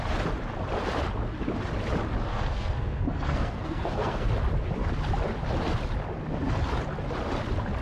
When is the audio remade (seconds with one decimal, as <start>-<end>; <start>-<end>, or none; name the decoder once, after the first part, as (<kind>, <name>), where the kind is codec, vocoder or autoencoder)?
2.3-4.3 (codec, SNAC)

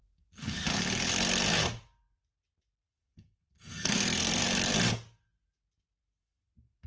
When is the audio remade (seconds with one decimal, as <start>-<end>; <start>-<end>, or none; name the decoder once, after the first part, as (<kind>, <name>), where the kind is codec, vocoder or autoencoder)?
0.0-0.6 (codec, SNAC); 2.9-4.4; 6.2-6.9

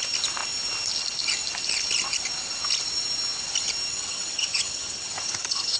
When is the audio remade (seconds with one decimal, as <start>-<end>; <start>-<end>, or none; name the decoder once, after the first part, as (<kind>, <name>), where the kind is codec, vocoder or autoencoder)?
3.9-5.8 (vocoder, HiFi-GAN)

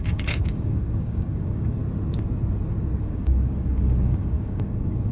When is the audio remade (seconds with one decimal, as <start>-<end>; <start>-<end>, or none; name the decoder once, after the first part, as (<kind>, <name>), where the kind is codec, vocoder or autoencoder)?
0.0-1.8 (codec, DAC); 3.0-5.1

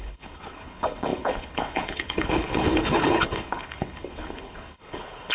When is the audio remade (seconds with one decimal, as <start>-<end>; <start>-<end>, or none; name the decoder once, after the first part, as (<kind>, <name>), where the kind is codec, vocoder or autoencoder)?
0.0-5.3 (codec, HILCodec)

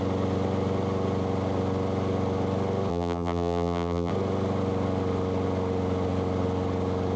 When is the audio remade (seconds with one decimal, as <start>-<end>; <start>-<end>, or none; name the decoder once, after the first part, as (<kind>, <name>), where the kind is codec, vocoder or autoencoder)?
2.9-4.1 (vocoder, BigVGAN v2)

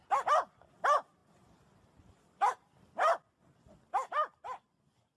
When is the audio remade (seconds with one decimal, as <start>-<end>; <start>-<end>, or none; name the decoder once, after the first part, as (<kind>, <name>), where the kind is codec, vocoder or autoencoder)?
none

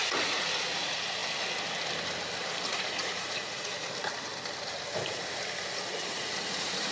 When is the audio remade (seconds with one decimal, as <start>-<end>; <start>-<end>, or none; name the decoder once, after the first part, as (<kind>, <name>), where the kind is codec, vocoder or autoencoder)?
0.0-1.2 (vocoder, Vocos); 2.7-3.7; 5.9-6.9